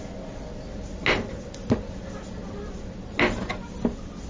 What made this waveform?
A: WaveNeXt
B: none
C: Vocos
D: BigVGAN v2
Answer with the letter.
B